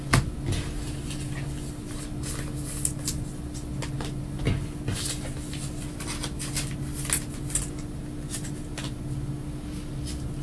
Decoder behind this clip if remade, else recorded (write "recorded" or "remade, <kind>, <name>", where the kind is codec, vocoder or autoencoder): recorded